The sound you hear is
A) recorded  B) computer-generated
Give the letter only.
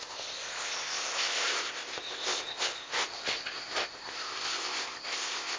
B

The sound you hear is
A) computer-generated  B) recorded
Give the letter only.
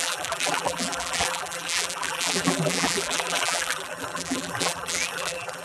A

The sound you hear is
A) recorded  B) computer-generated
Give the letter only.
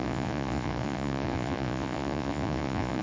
B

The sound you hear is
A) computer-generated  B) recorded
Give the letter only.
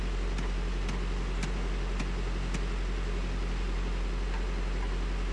B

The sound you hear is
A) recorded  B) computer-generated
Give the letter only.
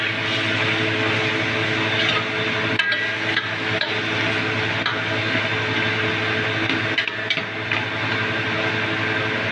A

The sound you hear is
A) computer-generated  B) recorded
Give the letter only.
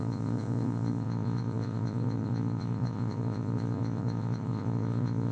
A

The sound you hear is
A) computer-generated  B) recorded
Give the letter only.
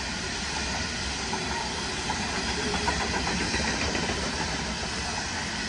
B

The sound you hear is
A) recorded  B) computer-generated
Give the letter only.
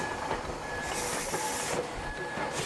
A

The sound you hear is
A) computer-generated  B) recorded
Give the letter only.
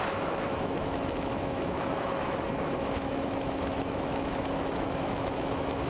A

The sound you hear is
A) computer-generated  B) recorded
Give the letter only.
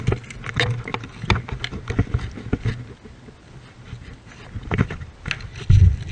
B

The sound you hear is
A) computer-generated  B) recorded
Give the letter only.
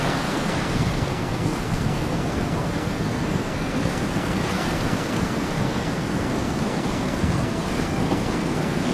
A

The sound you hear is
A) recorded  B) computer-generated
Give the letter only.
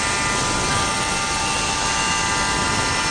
A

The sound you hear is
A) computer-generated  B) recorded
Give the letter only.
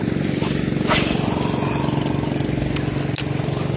B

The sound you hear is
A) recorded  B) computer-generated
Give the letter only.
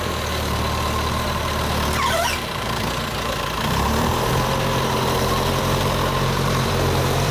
B